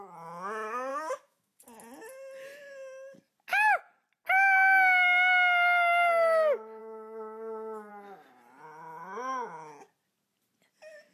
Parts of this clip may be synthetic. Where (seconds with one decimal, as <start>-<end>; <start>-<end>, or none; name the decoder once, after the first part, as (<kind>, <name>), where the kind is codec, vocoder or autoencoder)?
0.9-1.6 (autoencoder, DAC-VAE); 6.8-7.9